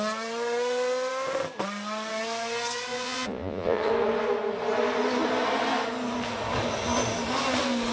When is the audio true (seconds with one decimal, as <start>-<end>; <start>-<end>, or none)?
0.0-2.9; 3.9-7.9